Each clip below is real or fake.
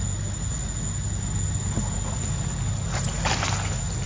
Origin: real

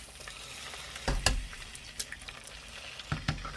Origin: real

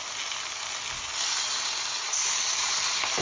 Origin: real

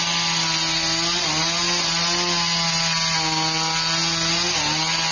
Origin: real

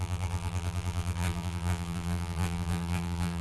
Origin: fake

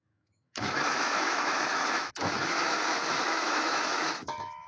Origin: fake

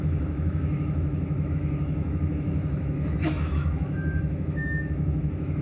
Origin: fake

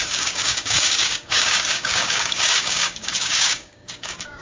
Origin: fake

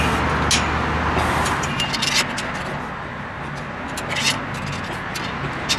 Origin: real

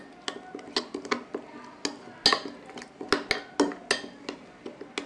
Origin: real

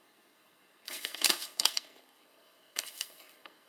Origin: fake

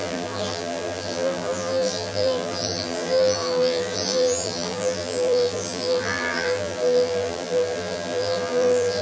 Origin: fake